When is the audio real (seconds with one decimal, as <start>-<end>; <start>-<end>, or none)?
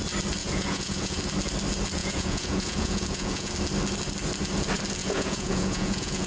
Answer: 0.0-0.4; 1.2-2.0; 3.5-5.0